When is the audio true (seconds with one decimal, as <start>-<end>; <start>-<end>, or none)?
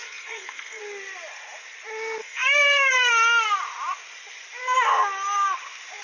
0.8-2.2; 3.1-6.0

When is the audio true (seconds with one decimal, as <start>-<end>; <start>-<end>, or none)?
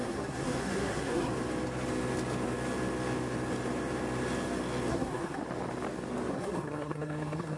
1.3-4.9; 5.4-6.3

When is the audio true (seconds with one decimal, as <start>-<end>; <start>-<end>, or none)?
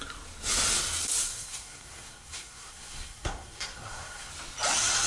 0.0-1.3; 4.3-5.1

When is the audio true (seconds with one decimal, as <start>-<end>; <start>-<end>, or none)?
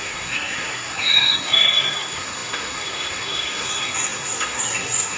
none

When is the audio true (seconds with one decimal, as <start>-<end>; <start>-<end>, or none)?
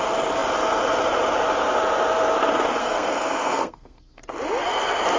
0.0-2.8; 4.2-5.2